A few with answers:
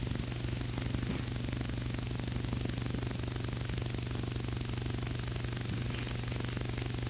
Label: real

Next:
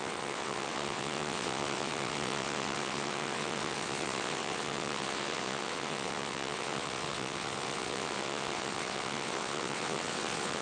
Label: fake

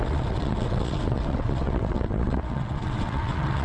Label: fake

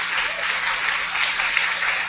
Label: real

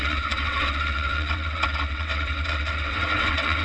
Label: fake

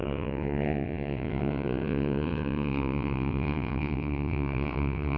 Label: fake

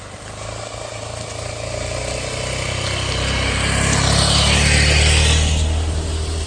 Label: real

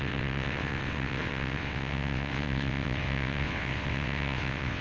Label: fake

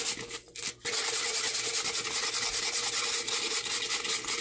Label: real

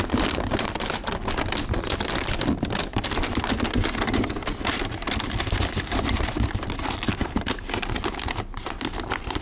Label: real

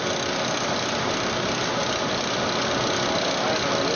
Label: real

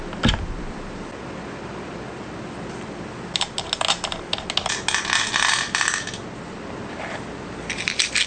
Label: real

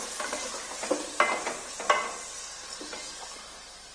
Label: real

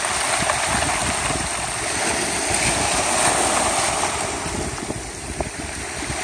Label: real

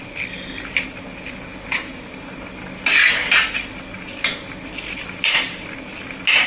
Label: real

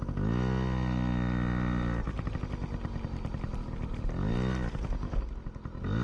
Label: real